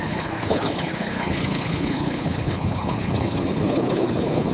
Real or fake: fake